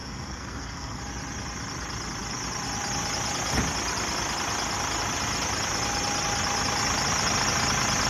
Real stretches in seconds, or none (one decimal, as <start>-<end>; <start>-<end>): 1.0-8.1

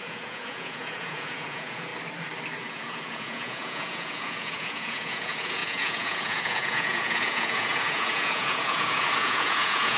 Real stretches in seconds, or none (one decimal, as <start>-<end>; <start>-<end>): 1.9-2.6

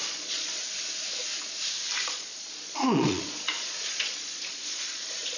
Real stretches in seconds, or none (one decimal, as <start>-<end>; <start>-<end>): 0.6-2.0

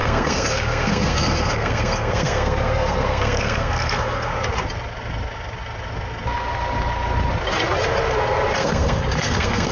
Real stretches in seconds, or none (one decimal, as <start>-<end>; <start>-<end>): 4.3-8.6

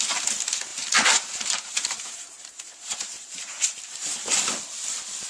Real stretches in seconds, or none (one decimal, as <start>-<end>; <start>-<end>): 0.0-0.7; 3.9-5.3